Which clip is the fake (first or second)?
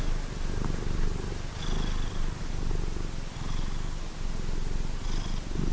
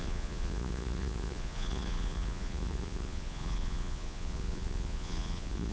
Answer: second